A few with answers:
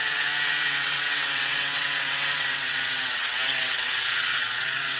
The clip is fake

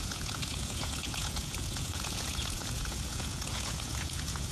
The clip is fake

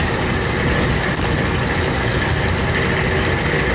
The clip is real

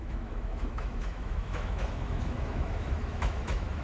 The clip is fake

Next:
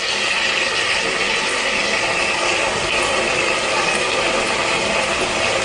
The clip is real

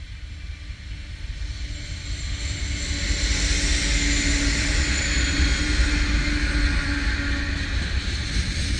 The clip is real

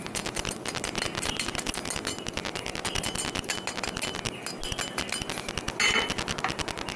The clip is real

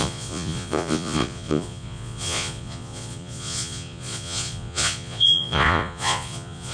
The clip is fake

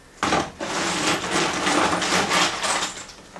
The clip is real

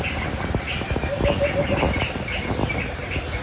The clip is real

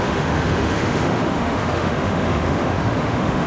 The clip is fake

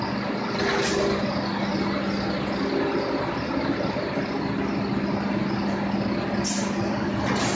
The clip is real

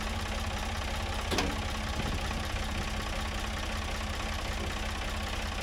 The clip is real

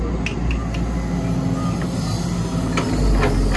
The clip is real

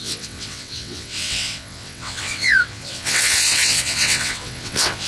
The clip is fake